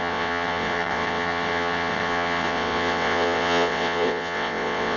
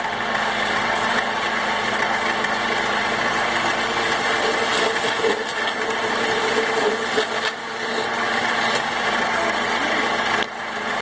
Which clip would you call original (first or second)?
second